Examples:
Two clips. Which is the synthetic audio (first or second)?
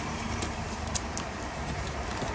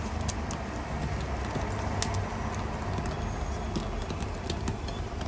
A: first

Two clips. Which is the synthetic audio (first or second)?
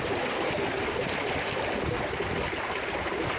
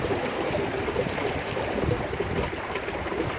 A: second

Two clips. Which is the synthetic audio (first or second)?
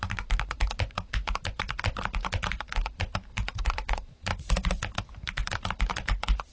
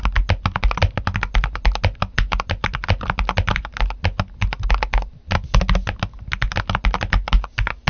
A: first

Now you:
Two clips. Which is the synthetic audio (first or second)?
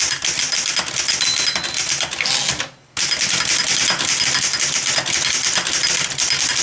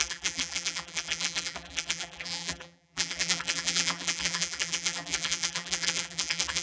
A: second